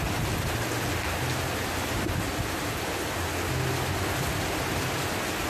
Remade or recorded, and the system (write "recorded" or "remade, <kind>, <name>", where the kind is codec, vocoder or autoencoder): recorded